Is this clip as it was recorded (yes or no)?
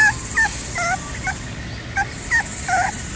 yes